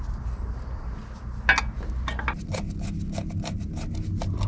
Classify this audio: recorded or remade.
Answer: recorded